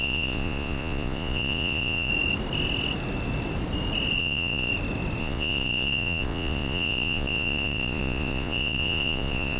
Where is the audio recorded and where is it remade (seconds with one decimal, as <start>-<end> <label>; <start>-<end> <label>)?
0.0-2.1 remade; 2.1-4.2 recorded; 4.2-4.7 remade; 4.7-5.2 recorded; 5.2-9.6 remade